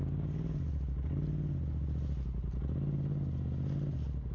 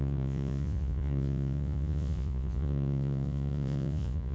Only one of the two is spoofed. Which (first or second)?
second